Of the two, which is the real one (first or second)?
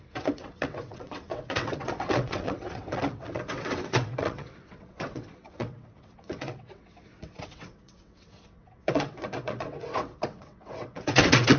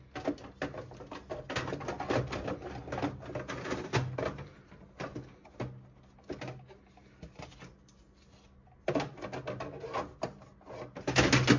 second